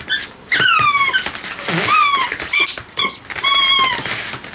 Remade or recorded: recorded